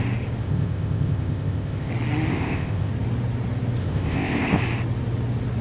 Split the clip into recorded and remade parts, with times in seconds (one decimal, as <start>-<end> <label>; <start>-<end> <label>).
0.0-0.4 recorded; 0.4-1.9 remade; 1.9-2.3 recorded; 2.3-2.9 remade; 2.9-3.8 recorded; 3.8-4.6 remade; 4.6-5.6 recorded